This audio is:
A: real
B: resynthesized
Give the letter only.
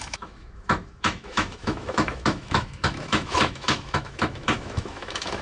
B